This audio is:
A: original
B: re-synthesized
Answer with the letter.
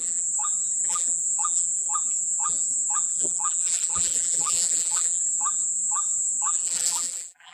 B